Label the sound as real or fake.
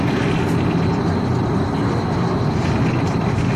real